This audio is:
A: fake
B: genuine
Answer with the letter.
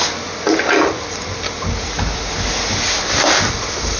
B